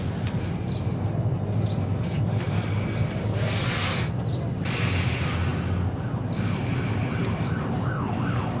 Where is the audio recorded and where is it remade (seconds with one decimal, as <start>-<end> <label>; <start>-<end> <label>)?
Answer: 0.0-8.6 recorded